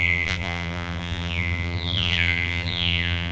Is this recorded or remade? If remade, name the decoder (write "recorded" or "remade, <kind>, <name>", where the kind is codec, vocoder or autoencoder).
remade, vocoder, BigVGAN v2